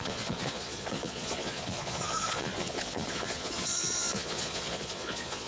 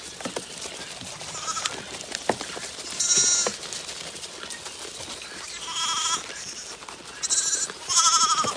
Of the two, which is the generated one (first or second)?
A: first